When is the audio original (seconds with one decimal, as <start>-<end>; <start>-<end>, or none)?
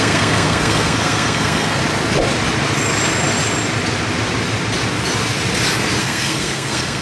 1.8-6.0